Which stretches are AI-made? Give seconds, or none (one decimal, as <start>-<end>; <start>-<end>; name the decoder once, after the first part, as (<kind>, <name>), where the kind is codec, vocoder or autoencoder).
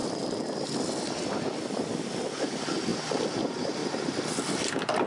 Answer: 0.0-1.3 (vocoder, BigVGAN v2); 2.9-3.4; 3.8-4.6